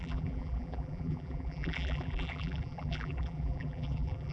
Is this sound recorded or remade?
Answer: remade